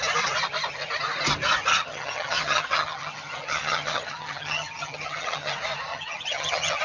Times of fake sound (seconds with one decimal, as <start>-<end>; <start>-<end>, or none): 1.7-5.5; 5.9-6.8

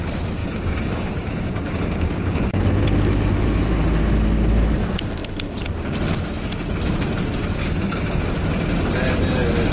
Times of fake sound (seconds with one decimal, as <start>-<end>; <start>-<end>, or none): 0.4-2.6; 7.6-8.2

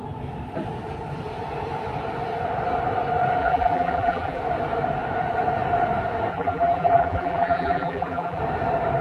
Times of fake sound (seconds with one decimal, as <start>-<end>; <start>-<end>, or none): 3.4-4.4; 6.3-8.4

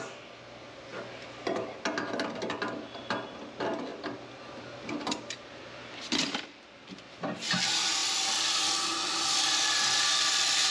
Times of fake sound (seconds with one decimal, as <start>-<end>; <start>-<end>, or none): none